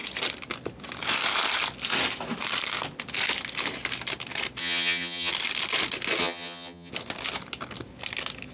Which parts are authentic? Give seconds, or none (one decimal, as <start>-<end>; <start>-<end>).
0.0-4.6; 5.3-6.2; 6.9-8.5